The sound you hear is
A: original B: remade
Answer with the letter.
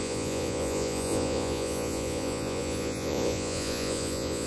B